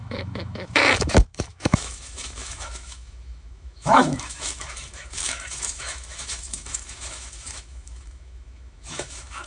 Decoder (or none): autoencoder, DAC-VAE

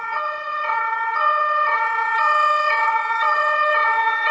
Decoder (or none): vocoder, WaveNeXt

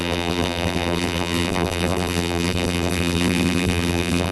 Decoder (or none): vocoder, BigVGAN v2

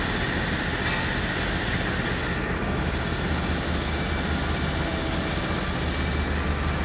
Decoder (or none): none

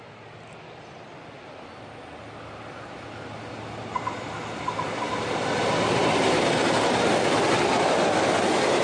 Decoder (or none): none